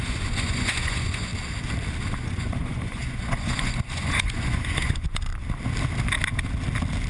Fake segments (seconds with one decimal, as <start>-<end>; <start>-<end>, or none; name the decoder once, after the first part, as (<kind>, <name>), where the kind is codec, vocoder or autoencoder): 0.0-1.3 (vocoder, Vocos); 2.2-5.3